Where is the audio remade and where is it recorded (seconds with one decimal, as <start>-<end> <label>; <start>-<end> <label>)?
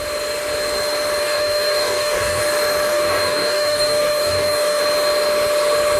0.0-1.2 recorded; 1.2-2.4 remade; 2.4-2.9 recorded; 2.9-4.8 remade; 4.8-6.0 recorded